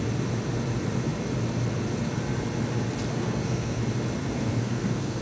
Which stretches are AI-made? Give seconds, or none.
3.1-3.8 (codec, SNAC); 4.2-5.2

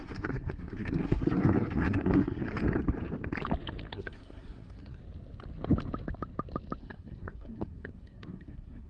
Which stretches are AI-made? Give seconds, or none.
0.0-2.6 (codec, SNAC); 3.9-5.0; 6.8-8.9

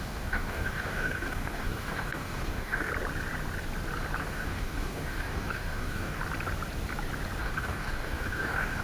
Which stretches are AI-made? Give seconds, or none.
0.0-2.9 (codec, DAC); 4.2-6.2; 7.4-8.8

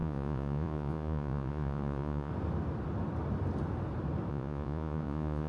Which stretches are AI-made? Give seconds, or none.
0.0-2.3 (vocoder, Vocos); 4.3-5.5

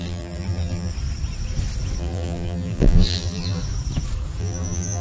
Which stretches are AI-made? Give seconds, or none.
0.0-0.9 (vocoder, BigVGAN v2); 2.0-3.6; 4.4-5.0

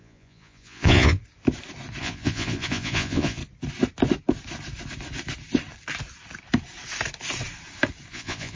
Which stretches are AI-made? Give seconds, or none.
0.0-1.2 (vocoder, Vocos); 2.0-3.4; 8.1-8.6

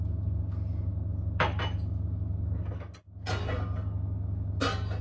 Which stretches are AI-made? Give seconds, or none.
none